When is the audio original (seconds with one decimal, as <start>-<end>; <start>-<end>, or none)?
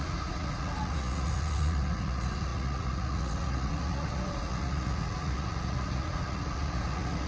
none